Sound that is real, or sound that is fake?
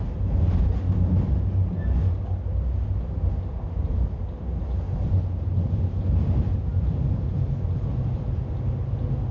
real